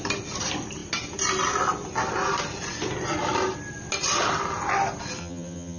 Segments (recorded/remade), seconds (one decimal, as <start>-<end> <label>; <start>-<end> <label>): 0.0-5.2 recorded; 5.2-5.8 remade

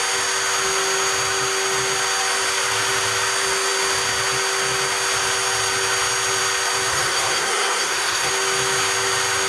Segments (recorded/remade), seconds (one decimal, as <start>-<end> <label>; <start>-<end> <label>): 0.0-6.9 recorded; 6.9-8.3 remade; 8.3-9.5 recorded

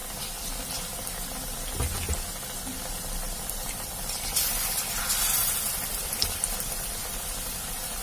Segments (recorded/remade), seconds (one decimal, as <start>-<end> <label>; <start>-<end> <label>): 0.0-3.4 recorded; 3.4-5.4 remade; 5.4-5.9 recorded; 5.9-8.0 remade

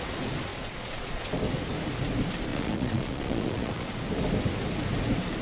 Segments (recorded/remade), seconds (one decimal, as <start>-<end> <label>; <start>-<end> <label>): 0.0-0.5 recorded; 0.5-1.2 remade; 1.2-2.5 recorded; 2.5-3.9 remade; 3.9-5.4 recorded